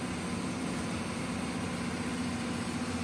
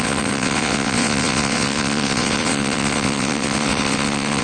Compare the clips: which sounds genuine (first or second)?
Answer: first